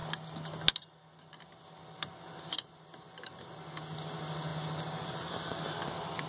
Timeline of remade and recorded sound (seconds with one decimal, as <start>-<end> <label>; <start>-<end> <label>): 0.0-6.3 recorded

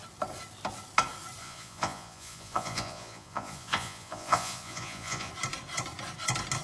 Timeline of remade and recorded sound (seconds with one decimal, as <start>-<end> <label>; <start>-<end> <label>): 0.0-1.4 recorded; 1.4-5.3 remade; 5.3-6.6 recorded

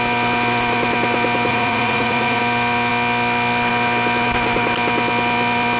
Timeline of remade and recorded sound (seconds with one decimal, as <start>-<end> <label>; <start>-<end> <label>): 0.0-1.5 recorded; 1.5-2.4 remade; 2.4-5.8 recorded

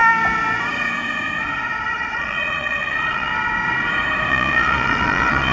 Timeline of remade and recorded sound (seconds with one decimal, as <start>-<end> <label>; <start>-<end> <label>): 0.0-1.9 recorded; 1.9-3.3 remade; 3.3-4.3 recorded; 4.3-5.5 remade

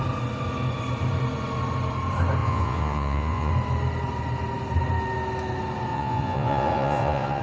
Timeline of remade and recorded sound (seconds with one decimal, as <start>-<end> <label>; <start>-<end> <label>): 0.0-2.4 recorded; 2.4-3.5 remade; 3.5-5.9 recorded; 5.9-7.4 remade

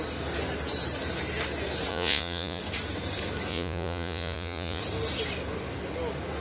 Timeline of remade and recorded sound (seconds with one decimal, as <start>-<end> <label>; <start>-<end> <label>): 0.0-1.9 recorded; 1.9-2.6 remade; 2.6-3.5 recorded; 3.5-4.8 remade; 4.8-6.4 recorded

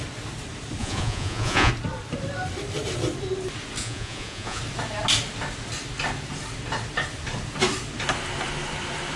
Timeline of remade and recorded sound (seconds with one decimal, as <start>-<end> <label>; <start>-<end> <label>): 0.0-0.8 recorded; 0.8-1.7 remade; 1.7-3.8 recorded; 3.8-4.6 remade; 4.6-9.2 recorded

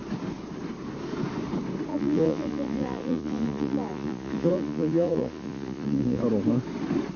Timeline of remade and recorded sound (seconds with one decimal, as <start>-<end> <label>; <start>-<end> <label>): 0.0-1.9 recorded; 1.9-6.2 remade; 6.2-7.2 recorded